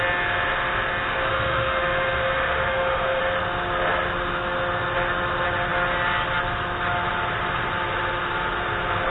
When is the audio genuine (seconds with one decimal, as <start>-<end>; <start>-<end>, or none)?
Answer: 0.0-1.3; 3.2-9.1